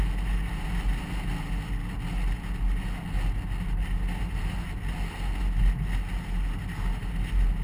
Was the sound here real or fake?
real